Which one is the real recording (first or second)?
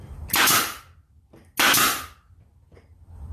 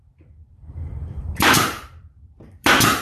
first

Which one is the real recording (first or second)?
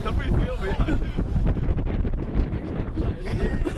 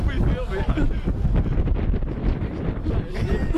second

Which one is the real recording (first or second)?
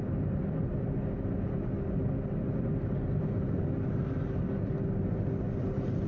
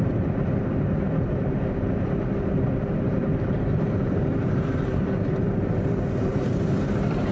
first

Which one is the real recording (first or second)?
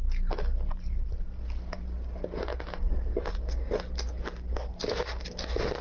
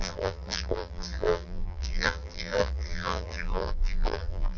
first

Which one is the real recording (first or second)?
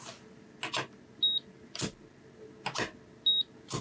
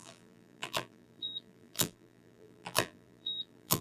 first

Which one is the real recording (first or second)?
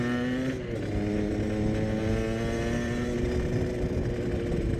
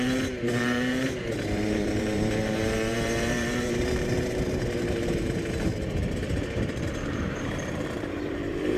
first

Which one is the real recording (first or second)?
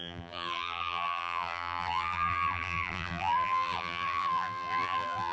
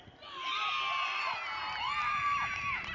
second